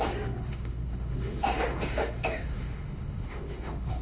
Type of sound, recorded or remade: remade